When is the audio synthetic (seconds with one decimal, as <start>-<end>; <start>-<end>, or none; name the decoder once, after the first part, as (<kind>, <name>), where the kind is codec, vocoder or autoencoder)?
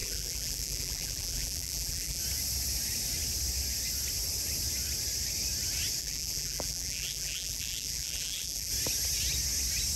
0.0-2.2 (vocoder, BigVGAN v2); 6.0-8.7